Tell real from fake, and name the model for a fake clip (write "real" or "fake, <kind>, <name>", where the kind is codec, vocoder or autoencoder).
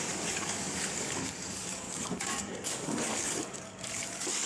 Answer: fake, codec, DAC